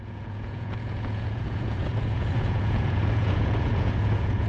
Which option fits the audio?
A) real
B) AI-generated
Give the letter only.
B